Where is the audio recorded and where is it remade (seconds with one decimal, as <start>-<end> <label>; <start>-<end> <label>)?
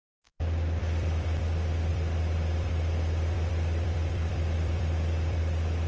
0.0-0.8 recorded; 0.8-1.4 remade; 1.4-1.9 recorded; 1.9-5.4 remade; 5.4-5.9 recorded